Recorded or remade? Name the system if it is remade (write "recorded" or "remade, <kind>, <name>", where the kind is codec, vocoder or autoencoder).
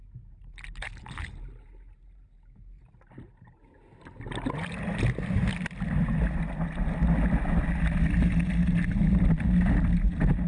recorded